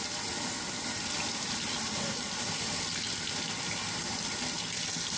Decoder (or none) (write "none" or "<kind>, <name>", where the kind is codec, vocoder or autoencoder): none